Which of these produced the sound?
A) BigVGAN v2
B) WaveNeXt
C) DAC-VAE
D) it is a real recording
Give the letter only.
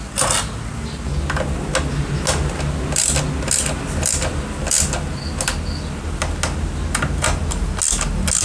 D